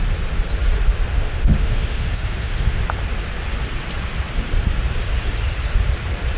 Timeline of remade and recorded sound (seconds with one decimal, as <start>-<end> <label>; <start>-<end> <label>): 0.0-1.1 recorded; 1.1-2.8 remade; 2.8-6.4 recorded